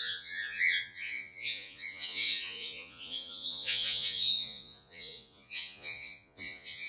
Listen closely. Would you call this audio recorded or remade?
remade